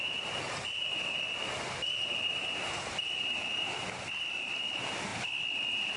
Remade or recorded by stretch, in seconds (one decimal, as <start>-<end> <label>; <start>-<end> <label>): 0.0-6.0 recorded